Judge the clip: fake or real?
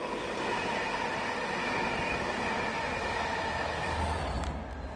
real